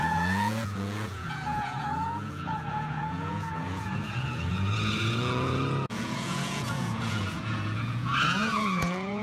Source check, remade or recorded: remade